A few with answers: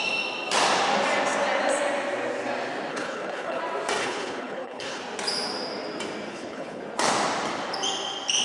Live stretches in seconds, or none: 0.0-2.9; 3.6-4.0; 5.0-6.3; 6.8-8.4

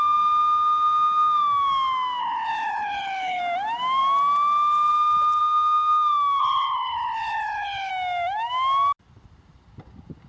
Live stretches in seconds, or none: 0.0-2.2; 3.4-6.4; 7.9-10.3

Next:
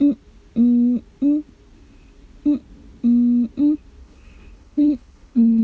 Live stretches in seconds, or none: 0.0-4.0